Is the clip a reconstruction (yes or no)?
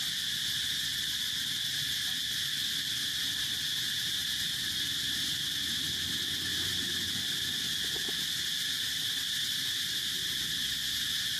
no